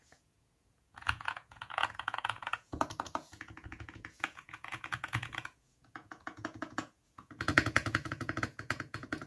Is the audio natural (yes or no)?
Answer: no